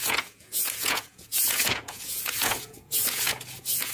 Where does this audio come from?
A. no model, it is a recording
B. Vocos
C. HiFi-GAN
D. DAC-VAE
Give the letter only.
B